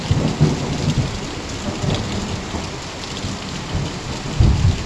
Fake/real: real